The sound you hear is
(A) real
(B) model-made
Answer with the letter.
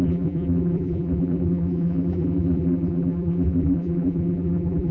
B